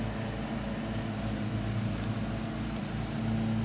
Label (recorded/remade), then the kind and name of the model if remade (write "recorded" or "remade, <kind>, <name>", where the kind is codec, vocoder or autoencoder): recorded